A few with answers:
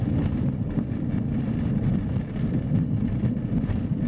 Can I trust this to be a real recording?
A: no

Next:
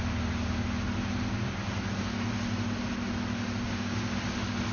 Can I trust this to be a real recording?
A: yes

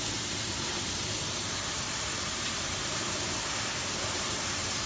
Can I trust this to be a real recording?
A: no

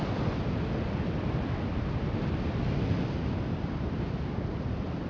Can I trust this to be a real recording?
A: yes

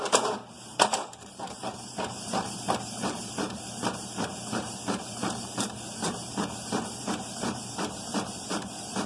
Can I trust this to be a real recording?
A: no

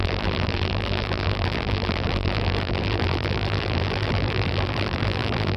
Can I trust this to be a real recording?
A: no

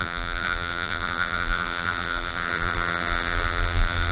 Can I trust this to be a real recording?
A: no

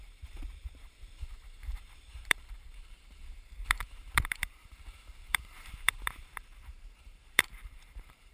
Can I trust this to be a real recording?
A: no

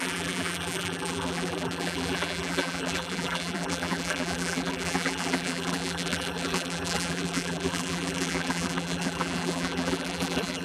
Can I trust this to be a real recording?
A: no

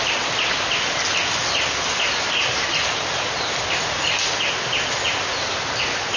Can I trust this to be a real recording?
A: yes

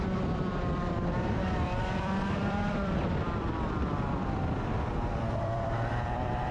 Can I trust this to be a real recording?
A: no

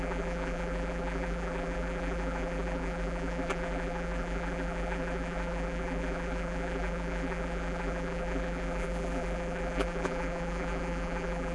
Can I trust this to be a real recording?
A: no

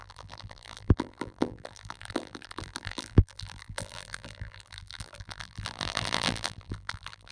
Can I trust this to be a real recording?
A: no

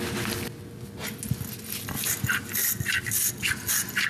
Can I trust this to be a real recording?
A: yes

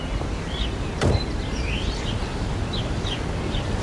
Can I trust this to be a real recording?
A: no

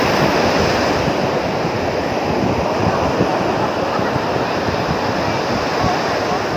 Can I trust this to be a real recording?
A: yes